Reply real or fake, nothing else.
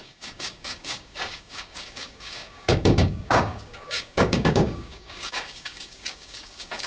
fake